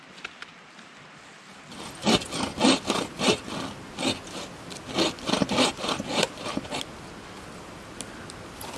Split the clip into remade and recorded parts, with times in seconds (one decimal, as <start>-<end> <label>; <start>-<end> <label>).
0.0-8.8 recorded